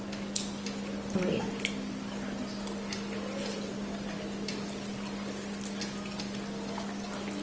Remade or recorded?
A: recorded